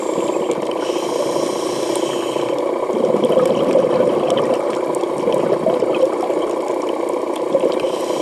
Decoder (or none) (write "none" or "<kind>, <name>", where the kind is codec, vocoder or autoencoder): none